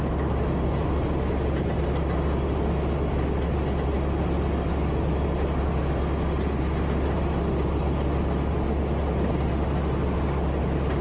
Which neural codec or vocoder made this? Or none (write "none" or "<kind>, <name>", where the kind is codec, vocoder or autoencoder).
none